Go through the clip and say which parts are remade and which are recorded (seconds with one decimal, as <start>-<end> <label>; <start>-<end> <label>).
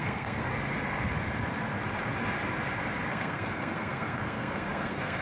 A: 0.0-0.5 remade; 0.5-3.1 recorded; 3.1-5.2 remade